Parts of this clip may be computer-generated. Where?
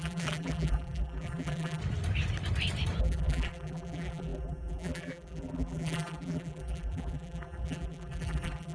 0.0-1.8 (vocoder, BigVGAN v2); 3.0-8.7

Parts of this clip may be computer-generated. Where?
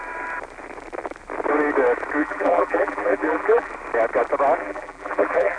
2.2-3.7 (vocoder, BigVGAN v2); 4.6-5.6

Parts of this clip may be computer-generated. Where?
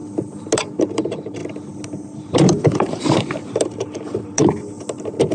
0.8-1.4 (vocoder, BigVGAN v2); 2.0-4.4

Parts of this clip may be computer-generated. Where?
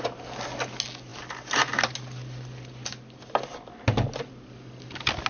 none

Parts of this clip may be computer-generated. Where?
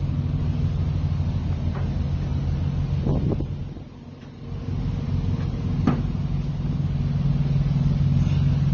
none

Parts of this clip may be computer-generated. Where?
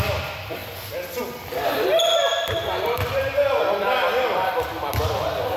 0.0-0.6 (vocoder, BigVGAN v2); 1.2-5.6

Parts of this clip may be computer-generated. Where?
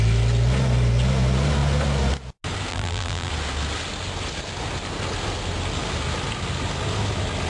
2.7-3.3 (vocoder, BigVGAN v2)